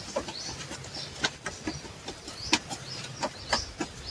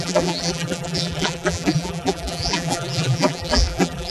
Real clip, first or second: first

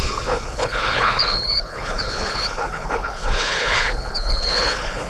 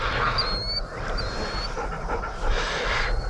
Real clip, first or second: second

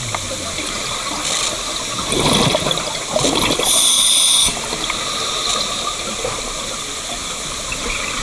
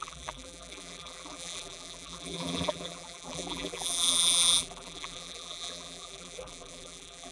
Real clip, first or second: first